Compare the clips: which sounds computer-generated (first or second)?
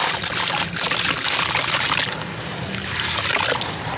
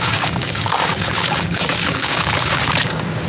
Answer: second